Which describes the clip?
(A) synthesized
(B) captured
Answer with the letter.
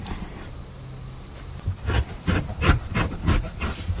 B